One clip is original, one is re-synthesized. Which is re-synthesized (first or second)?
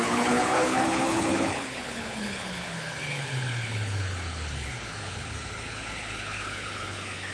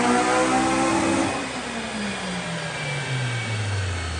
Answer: first